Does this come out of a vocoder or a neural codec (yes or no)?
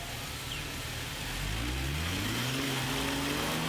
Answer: no